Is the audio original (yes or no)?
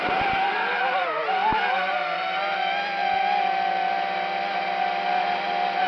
yes